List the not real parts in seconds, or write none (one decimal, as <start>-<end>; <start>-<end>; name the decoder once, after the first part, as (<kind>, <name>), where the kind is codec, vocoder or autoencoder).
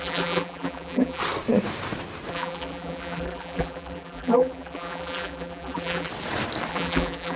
0.0-1.2 (vocoder, BigVGAN v2); 2.3-6.1; 6.7-7.4